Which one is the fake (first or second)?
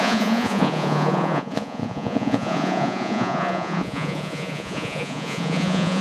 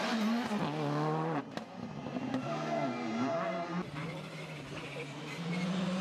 first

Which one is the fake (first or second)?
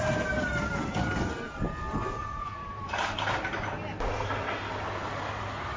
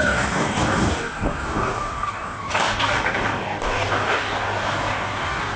second